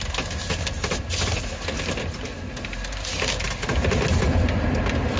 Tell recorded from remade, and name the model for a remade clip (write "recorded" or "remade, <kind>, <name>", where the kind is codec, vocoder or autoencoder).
recorded